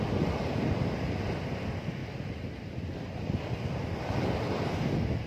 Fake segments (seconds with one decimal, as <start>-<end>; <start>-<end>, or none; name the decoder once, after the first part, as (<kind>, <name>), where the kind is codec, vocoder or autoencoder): none